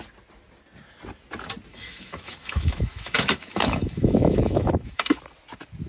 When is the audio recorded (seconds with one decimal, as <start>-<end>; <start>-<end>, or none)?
0.0-1.7; 5.2-5.9